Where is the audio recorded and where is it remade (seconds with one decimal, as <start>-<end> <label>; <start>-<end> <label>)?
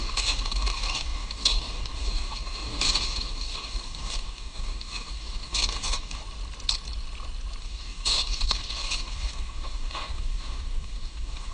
0.0-6.2 remade; 6.2-7.6 recorded; 7.6-11.5 remade